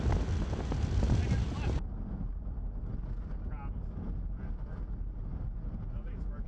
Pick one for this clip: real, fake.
real